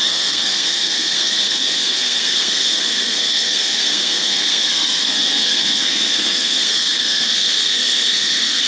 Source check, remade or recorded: remade